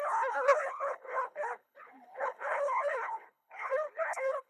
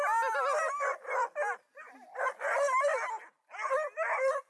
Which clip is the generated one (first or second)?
first